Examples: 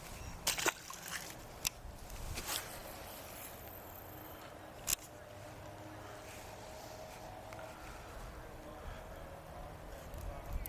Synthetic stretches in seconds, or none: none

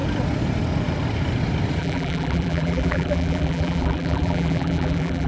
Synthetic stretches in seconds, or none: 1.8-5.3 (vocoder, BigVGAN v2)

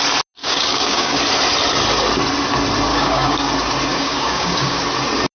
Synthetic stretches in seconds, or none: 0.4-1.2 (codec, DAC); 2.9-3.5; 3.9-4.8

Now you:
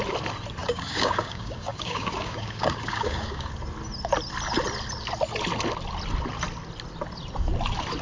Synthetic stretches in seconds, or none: 0.6-3.5 (codec, DAC)